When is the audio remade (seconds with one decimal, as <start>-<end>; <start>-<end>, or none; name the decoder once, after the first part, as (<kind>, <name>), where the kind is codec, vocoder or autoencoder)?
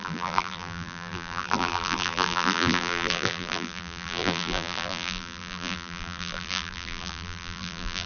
0.0-8.1 (vocoder, BigVGAN v2)